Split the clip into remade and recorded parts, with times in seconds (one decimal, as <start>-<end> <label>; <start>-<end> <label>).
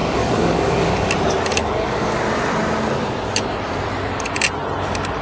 0.0-1.1 remade; 1.1-1.6 recorded; 1.6-2.2 remade; 2.2-5.2 recorded